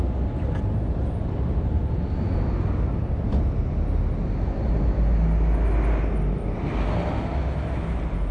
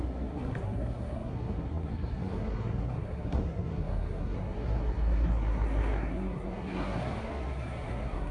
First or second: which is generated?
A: second